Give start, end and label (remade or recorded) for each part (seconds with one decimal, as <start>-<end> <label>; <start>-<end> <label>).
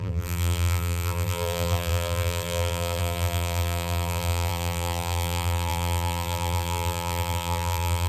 0.0-8.1 remade